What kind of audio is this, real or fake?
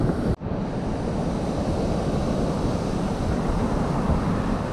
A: real